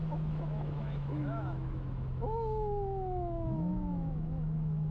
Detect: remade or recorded remade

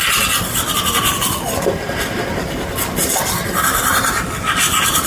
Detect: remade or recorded recorded